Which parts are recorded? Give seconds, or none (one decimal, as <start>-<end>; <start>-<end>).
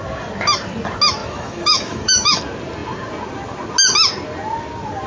0.0-1.2; 2.4-5.1